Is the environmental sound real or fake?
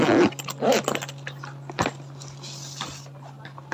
real